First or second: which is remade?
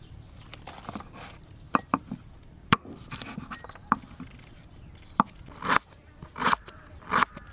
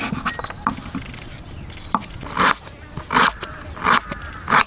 first